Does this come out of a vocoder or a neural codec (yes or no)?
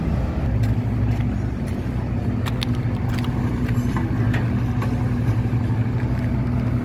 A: no